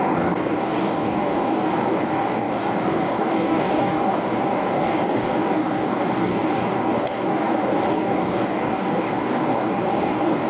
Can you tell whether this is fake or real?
fake